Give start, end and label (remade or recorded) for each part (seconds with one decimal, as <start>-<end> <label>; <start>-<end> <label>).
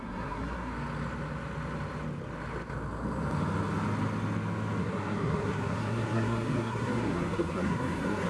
0.0-0.7 remade; 0.7-4.8 recorded; 4.8-8.3 remade